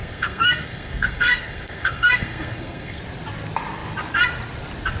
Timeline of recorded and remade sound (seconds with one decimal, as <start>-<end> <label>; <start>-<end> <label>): 0.0-3.0 remade; 3.0-5.0 recorded